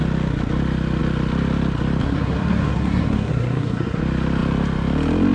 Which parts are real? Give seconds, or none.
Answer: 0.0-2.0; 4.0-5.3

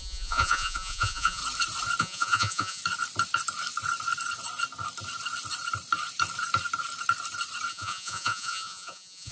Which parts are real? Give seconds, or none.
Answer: 1.4-2.0; 2.8-7.7